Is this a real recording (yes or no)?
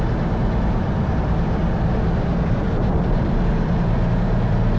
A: no